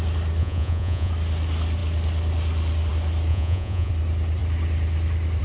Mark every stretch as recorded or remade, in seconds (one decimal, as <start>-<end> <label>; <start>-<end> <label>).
0.0-0.4 recorded; 0.4-1.1 remade; 1.1-3.3 recorded; 3.3-3.9 remade; 3.9-5.4 recorded

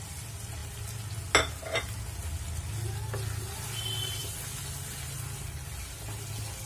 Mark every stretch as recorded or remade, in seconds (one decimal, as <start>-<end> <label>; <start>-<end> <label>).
0.0-6.7 recorded

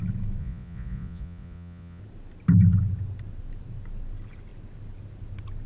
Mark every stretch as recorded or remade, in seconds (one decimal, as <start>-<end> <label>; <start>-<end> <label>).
0.0-0.4 recorded; 0.4-2.0 remade; 2.0-5.7 recorded

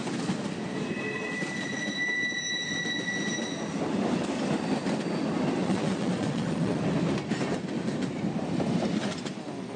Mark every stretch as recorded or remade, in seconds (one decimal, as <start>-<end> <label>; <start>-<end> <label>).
0.0-5.6 recorded; 5.6-6.8 remade; 6.8-9.8 recorded